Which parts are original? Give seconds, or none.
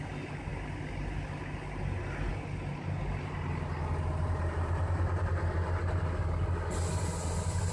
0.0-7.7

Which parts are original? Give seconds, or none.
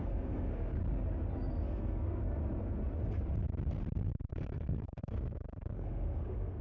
0.8-1.5; 2.2-4.3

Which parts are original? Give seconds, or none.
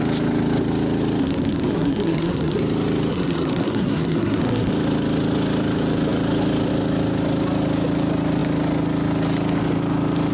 0.0-1.2; 2.6-3.1; 4.7-10.3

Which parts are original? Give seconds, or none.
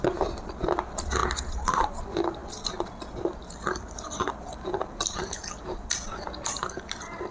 0.0-7.3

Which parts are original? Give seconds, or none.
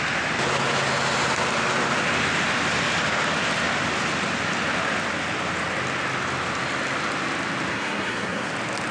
0.0-7.7; 8.5-8.9